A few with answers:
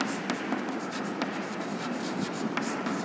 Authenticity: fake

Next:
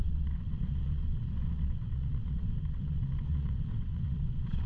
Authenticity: fake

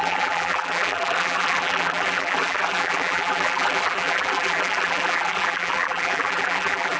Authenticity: fake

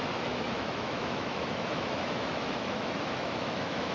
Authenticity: fake